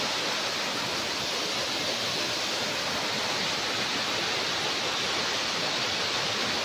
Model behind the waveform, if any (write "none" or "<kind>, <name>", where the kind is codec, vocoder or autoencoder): none